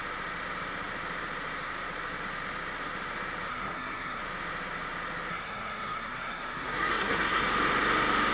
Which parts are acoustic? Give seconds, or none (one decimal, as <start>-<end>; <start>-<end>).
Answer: 0.0-3.5; 4.2-5.3; 7.4-8.3